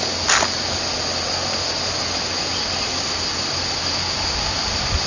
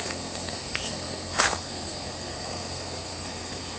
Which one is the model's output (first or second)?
second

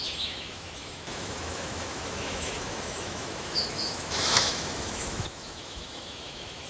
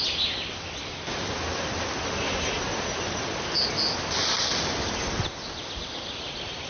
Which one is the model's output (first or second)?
first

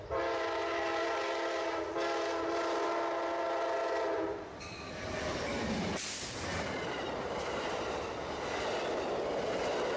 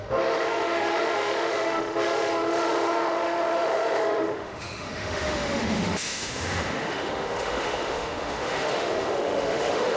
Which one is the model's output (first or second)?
second